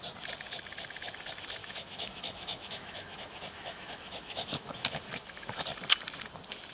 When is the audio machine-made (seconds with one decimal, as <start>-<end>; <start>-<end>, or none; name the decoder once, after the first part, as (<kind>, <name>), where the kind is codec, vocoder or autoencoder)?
1.6-5.5 (autoencoder, DAC-VAE)